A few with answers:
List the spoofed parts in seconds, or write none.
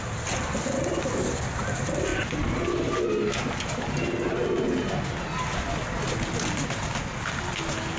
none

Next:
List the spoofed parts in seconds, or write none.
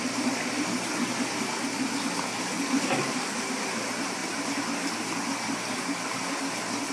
none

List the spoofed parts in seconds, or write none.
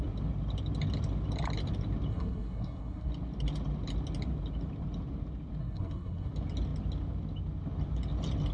2.1-3.1 (codec, SNAC); 5.6-6.3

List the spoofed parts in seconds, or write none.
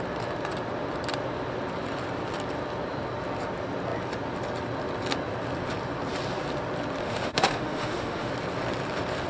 7.0-8.3 (autoencoder, DAC-VAE)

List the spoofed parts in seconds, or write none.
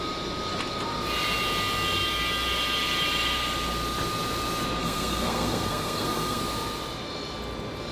4.8-6.4 (codec, SNAC)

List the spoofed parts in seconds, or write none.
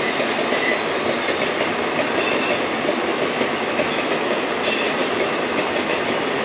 3.1-4.4 (autoencoder, DAC-VAE); 5.0-5.7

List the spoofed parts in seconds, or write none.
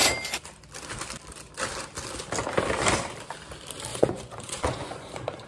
3.9-5.5 (vocoder, Vocos)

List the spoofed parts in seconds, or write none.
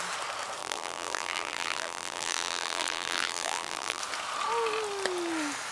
0.6-4.0 (vocoder, BigVGAN v2)